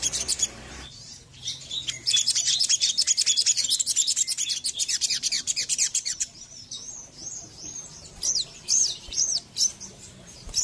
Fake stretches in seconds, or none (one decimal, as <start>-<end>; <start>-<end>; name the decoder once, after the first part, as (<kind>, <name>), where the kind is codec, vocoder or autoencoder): 0.0-2.7 (vocoder, BigVGAN v2); 4.7-10.6